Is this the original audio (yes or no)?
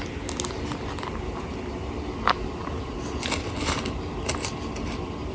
yes